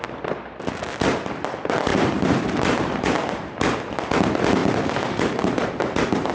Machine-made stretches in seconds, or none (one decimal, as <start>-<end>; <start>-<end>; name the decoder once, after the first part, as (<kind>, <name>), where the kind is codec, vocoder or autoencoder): 1.9-3.6 (vocoder, BigVGAN v2); 4.6-6.3